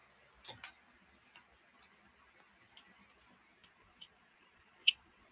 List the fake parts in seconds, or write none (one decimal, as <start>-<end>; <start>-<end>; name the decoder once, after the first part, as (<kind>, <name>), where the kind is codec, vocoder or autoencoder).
3.6-5.3 (vocoder, Vocos)